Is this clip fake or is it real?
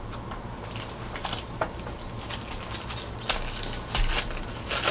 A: real